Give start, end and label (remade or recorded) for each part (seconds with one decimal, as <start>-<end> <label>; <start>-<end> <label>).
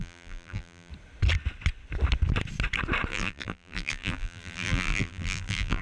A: 0.0-0.9 remade; 0.9-3.1 recorded; 3.1-5.8 remade